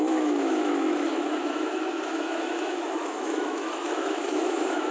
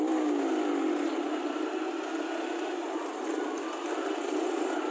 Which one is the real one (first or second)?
second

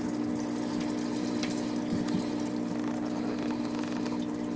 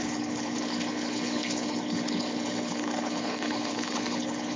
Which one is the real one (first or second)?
first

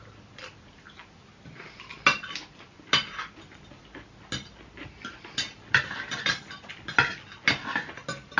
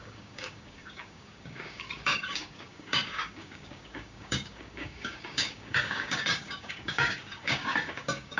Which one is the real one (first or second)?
first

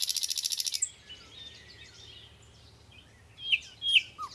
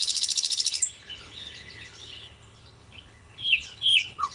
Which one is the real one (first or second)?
first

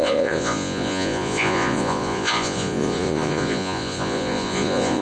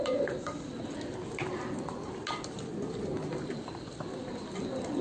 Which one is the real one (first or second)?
second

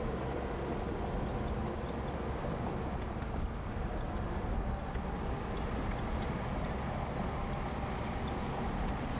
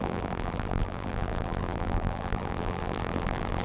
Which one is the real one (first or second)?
first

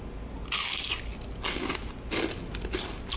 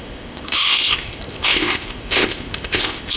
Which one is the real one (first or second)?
first